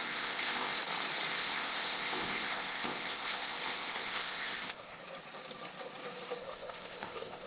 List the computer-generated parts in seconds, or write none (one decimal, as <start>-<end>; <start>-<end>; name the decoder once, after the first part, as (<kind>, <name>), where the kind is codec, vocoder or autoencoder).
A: 0.0-0.8 (codec, ZipCodec); 1.3-5.0; 6.4-7.5